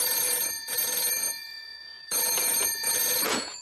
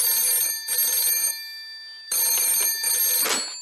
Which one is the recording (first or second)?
second